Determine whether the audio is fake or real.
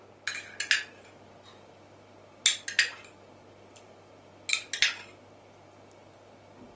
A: real